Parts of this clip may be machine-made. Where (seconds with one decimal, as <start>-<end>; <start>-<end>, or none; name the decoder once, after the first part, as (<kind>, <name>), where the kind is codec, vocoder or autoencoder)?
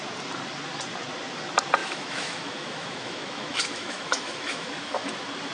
1.8-5.1 (autoencoder, DAC-VAE)